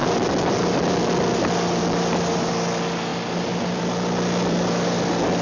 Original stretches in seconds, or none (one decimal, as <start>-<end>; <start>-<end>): 0.0-5.4